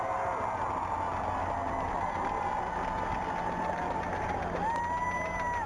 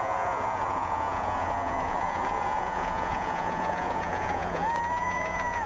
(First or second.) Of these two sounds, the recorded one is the first